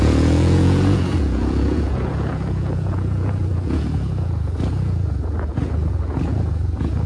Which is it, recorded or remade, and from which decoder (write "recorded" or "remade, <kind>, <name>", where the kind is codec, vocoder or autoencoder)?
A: remade, vocoder, Vocos